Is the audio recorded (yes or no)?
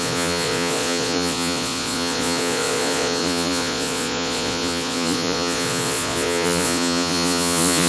no